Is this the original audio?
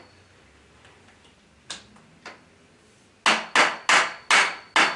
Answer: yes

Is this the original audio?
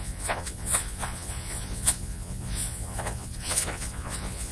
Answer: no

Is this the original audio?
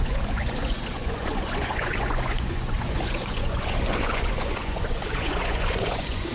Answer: no